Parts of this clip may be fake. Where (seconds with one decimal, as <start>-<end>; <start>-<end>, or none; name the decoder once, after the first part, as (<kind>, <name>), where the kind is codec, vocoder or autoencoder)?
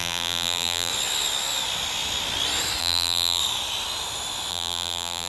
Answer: 0.0-0.9 (vocoder, BigVGAN v2); 2.8-3.4; 4.5-5.3